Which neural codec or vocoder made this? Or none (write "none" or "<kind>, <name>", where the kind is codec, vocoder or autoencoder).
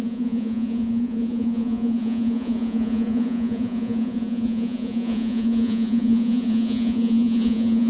vocoder, Vocos